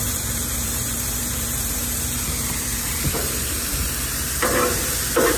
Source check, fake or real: fake